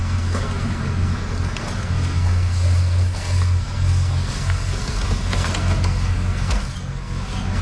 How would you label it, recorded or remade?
remade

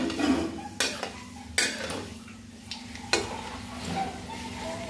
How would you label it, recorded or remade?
recorded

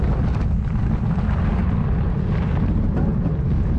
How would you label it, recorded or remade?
recorded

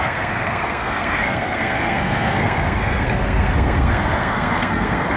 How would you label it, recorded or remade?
remade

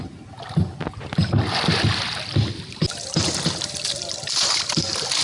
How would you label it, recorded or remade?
recorded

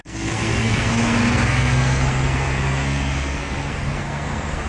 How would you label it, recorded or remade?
remade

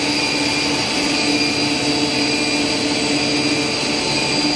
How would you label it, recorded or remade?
recorded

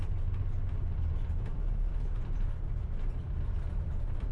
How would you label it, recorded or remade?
recorded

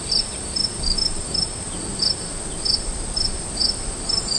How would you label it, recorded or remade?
recorded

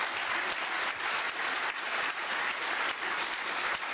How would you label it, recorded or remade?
recorded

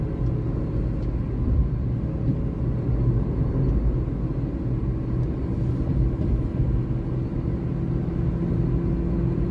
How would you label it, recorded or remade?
recorded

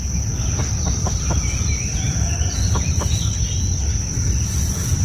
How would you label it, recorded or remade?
recorded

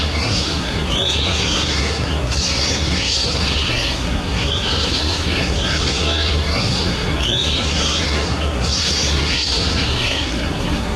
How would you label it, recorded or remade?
remade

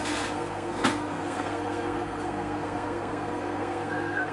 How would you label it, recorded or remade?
remade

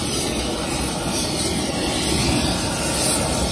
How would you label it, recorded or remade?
recorded